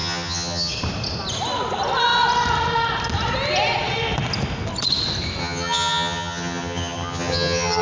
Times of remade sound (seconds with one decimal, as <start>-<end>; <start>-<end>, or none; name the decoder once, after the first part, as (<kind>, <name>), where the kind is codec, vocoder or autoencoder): 0.0-0.7 (vocoder, HiFi-GAN); 5.4-7.8